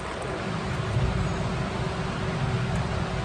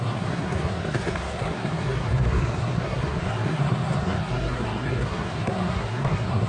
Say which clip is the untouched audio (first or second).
first